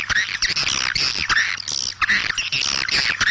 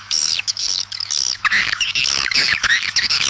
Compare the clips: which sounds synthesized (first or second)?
second